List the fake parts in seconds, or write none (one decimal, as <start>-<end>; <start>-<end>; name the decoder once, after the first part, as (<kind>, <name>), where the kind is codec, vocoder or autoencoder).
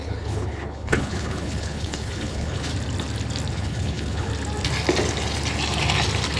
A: 0.0-2.7 (codec, HILCodec); 3.5-4.3